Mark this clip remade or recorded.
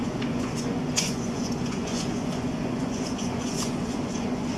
remade